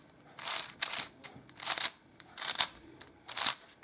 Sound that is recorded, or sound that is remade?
remade